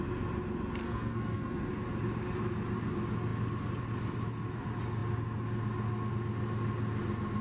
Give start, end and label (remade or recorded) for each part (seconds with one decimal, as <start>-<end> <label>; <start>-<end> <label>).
0.0-0.8 recorded; 0.8-1.7 remade; 1.7-7.4 recorded